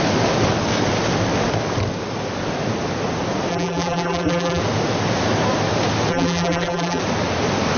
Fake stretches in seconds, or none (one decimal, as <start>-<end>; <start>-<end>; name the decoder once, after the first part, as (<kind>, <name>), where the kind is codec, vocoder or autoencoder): 3.5-4.6 (vocoder, BigVGAN v2); 6.1-7.0

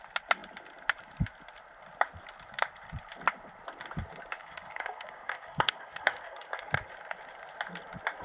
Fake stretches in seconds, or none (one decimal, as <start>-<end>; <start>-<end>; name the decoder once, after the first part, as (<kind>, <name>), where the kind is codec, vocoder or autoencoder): 4.4-6.7 (codec, DAC)

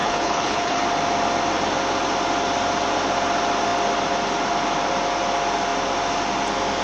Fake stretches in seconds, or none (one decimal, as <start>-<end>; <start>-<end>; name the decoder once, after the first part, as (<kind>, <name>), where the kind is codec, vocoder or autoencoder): 0.0-0.8 (codec, HILCodec)

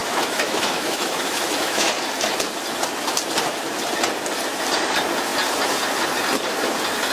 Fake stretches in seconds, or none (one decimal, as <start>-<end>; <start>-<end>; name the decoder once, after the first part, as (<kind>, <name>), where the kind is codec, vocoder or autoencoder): 0.0-1.9 (autoencoder, DAC-VAE)

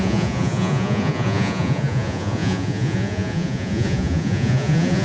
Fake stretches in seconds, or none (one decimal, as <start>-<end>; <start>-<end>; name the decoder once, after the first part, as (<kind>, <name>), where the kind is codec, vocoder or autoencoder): 0.0-5.0 (vocoder, Vocos)

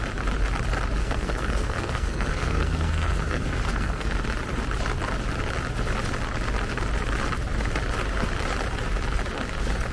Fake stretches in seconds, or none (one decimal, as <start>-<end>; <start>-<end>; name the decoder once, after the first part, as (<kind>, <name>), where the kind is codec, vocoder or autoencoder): 1.0-4.2 (codec, SNAC)

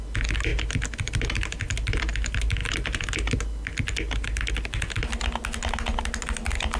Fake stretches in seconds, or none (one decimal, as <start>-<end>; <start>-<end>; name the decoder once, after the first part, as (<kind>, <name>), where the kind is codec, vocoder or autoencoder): none